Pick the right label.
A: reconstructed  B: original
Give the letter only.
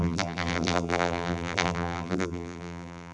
A